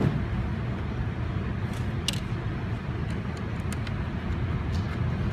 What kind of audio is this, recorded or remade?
recorded